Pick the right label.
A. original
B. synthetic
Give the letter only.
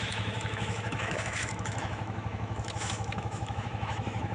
B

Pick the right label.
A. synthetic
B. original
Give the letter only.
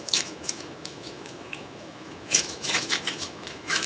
A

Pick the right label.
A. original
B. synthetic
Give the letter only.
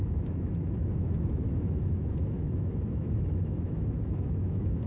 B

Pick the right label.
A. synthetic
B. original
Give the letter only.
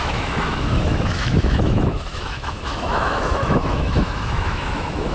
A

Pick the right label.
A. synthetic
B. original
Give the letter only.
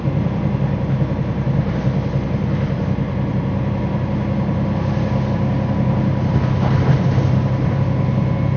B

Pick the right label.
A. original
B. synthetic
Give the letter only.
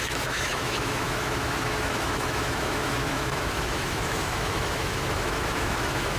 B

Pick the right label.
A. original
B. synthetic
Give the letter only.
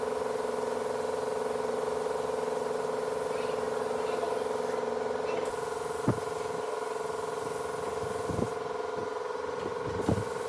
A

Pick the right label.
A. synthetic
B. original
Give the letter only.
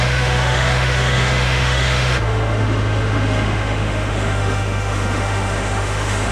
A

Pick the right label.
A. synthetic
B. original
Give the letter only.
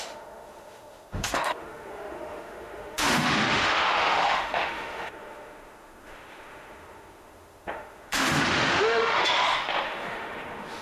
A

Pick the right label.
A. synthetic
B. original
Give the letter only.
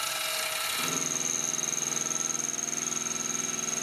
B